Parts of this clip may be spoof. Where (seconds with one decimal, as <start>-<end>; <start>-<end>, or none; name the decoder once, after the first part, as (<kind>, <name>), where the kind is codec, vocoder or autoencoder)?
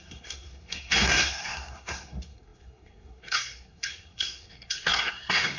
0.0-5.6 (codec, SNAC)